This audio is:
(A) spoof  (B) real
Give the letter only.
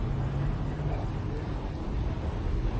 B